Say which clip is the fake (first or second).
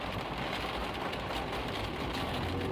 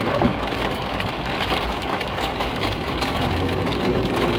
second